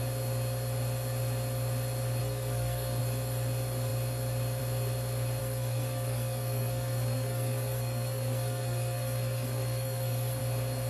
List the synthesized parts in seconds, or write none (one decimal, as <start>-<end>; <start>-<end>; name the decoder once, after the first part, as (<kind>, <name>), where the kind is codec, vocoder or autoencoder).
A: 2.2-3.0 (codec, SNAC); 5.4-10.4